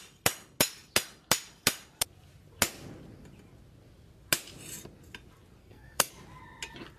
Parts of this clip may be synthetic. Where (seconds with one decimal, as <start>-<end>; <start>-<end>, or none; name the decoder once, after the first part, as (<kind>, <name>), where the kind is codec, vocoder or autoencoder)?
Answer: 5.6-6.1 (codec, SNAC)